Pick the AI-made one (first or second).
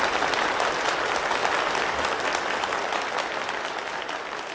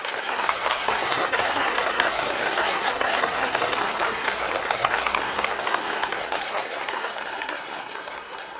second